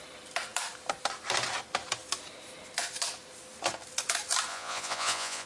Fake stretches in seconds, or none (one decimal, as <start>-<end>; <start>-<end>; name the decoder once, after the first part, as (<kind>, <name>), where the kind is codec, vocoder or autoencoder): 4.5-5.5 (vocoder, Vocos)

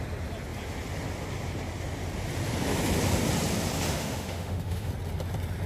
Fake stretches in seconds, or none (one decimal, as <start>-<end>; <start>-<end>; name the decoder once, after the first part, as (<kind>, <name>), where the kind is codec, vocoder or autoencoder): 3.9-4.9 (autoencoder, DAC-VAE)

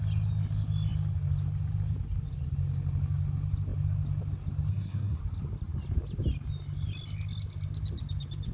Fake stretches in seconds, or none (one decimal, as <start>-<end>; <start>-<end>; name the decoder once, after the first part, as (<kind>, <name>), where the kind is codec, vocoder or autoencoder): 4.7-5.2 (codec, SNAC)

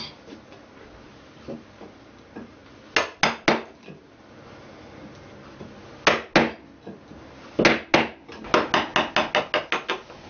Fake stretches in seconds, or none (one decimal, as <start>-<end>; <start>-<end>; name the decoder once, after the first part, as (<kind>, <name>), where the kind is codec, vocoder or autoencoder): none

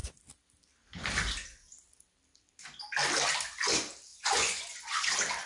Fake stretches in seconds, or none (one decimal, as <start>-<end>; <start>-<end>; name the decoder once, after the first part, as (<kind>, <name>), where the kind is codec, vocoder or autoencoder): 4.1-5.1 (vocoder, Vocos)